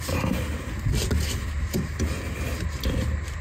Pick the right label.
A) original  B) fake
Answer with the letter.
A